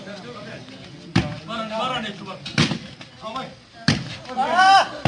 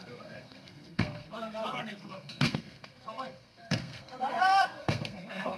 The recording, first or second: first